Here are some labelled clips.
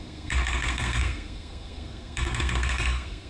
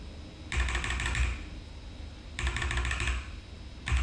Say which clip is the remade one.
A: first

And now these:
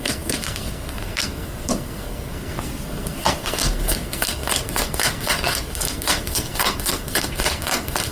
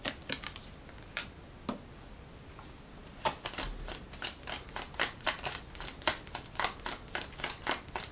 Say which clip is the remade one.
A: first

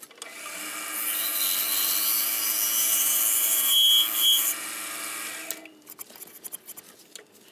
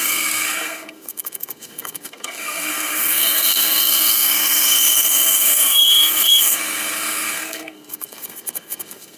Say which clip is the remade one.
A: second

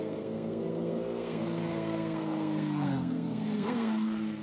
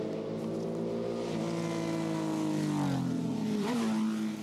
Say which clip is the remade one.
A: first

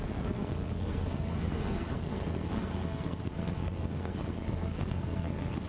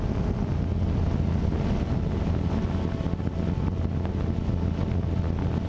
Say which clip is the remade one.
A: first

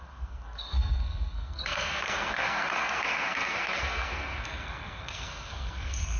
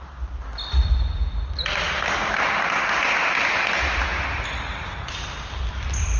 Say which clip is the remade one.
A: first